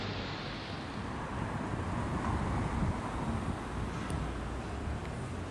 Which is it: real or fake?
real